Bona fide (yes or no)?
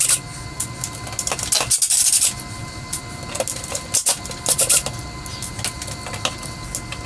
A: yes